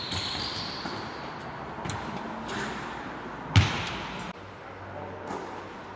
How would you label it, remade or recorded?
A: recorded